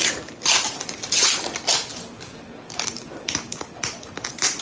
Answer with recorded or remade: recorded